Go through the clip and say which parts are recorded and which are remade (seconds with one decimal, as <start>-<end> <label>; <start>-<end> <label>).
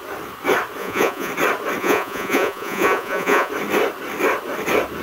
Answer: 0.0-0.8 recorded; 0.8-1.3 remade; 1.3-1.8 recorded; 1.8-3.5 remade; 3.5-5.0 recorded